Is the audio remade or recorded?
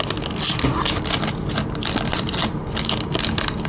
recorded